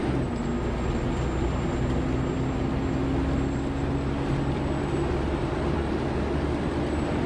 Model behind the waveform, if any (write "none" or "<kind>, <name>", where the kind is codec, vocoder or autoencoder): none